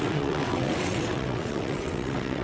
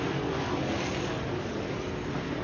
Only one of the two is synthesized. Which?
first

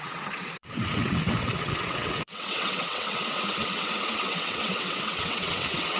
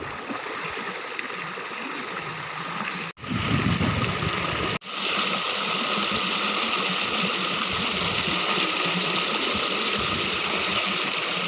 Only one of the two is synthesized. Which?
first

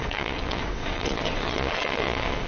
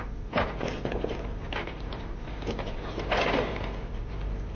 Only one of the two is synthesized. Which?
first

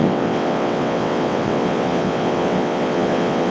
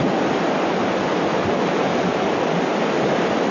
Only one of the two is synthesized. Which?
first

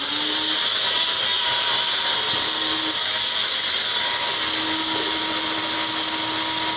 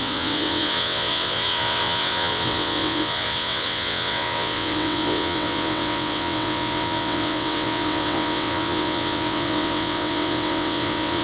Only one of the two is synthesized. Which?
second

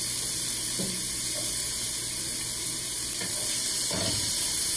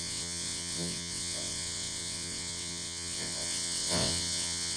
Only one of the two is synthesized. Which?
second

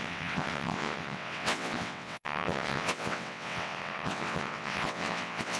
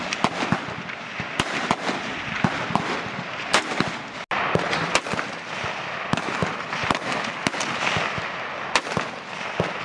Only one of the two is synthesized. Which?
first